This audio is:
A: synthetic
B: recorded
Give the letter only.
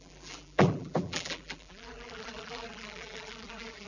A